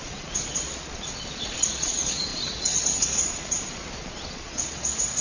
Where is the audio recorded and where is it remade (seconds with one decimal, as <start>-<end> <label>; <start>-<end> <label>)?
0.0-5.2 remade